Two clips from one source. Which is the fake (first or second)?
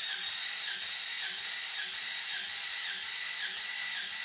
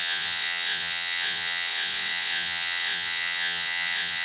second